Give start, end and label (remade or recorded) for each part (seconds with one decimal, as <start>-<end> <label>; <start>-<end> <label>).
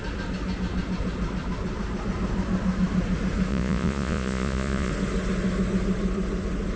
0.0-3.5 recorded; 3.5-4.9 remade; 4.9-6.8 recorded